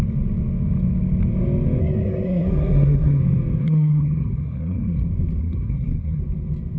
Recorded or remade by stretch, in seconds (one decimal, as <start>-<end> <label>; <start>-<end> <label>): 0.0-1.8 recorded; 1.8-3.2 remade; 3.2-3.6 recorded; 3.6-5.0 remade; 5.0-5.4 recorded; 5.4-6.2 remade; 6.2-6.8 recorded